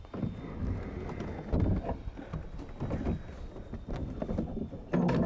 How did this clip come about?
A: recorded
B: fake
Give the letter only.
A